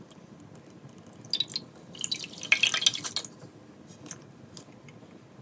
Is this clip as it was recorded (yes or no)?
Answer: yes